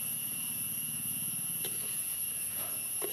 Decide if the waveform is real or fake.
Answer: fake